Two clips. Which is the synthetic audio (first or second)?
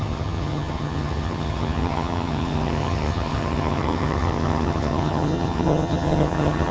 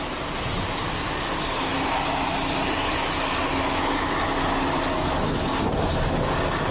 first